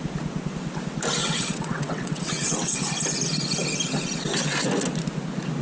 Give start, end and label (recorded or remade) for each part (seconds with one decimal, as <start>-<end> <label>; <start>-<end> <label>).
0.0-1.2 recorded; 1.2-2.8 remade; 2.8-5.6 recorded